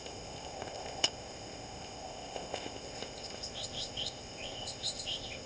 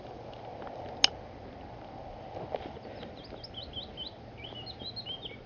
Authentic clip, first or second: second